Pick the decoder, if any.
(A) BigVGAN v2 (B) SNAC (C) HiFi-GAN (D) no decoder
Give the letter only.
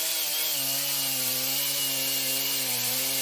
D